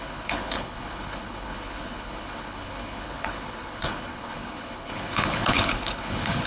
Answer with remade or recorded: remade